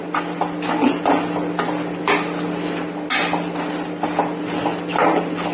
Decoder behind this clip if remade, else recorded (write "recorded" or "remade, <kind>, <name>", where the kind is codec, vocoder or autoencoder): recorded